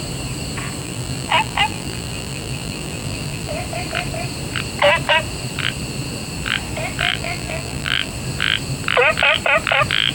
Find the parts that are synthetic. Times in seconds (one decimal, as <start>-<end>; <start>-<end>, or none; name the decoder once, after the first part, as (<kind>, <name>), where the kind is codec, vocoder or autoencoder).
0.8-3.5 (vocoder, BigVGAN v2); 7.1-8.1

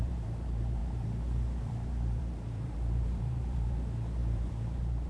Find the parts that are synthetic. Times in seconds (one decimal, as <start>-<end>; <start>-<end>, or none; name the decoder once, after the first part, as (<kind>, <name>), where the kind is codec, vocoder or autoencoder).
0.0-5.1 (vocoder, BigVGAN v2)

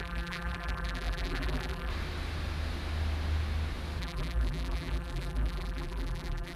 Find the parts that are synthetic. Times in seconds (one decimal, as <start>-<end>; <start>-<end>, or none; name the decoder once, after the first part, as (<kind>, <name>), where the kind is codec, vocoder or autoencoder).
0.0-1.9 (vocoder, BigVGAN v2); 4.0-6.6

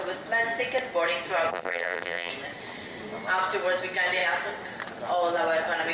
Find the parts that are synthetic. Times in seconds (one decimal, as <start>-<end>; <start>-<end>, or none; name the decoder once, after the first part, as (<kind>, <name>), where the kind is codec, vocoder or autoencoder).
1.5-2.3 (vocoder, BigVGAN v2)